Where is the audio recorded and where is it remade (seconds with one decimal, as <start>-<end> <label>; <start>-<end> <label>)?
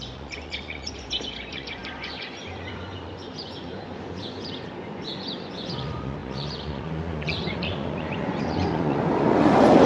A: 0.0-9.9 remade